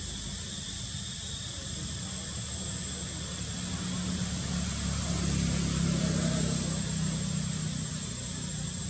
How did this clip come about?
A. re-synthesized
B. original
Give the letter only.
B